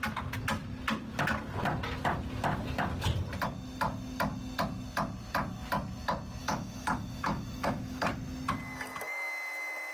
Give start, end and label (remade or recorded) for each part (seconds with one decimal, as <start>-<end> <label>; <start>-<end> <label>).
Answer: 0.0-6.4 recorded; 6.4-8.1 remade; 8.1-9.9 recorded